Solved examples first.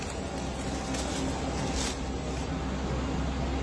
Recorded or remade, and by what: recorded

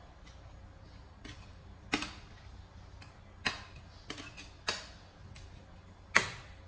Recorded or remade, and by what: recorded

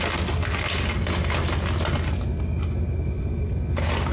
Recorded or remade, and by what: recorded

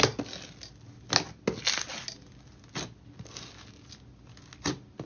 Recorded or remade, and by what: recorded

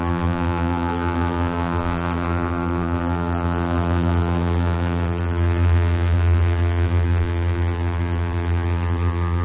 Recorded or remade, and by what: remade, vocoder, BigVGAN v2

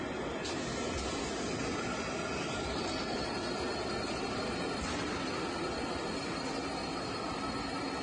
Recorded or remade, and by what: recorded